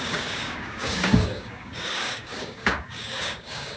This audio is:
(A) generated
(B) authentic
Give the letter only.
A